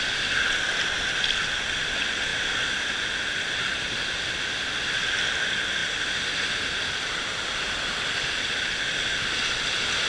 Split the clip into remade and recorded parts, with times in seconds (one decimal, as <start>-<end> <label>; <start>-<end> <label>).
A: 0.0-2.3 recorded; 2.3-2.8 remade; 2.8-5.8 recorded; 5.8-7.9 remade; 7.9-10.1 recorded